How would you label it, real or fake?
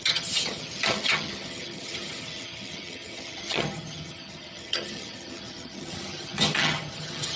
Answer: fake